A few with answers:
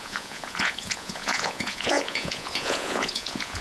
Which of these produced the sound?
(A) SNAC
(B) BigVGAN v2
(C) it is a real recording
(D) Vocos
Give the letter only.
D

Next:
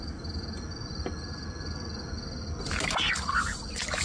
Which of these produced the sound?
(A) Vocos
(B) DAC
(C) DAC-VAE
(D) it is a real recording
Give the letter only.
D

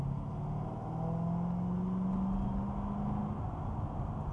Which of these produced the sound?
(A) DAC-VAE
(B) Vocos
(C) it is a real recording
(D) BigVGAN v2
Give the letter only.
C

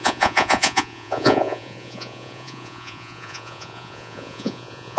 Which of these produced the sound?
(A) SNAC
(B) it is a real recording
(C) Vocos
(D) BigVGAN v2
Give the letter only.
C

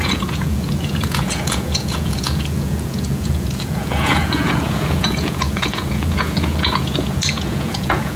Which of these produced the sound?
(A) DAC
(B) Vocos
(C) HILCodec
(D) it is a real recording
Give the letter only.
B